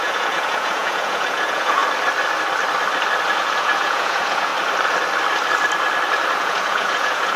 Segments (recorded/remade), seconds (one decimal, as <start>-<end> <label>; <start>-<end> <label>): 0.0-1.8 remade; 1.8-3.3 recorded; 3.3-4.5 remade; 4.5-6.4 recorded; 6.4-7.4 remade